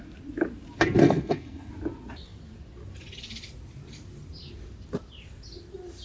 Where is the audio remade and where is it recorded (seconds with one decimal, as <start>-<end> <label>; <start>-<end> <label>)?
0.0-1.0 recorded; 1.0-1.7 remade; 1.7-6.0 recorded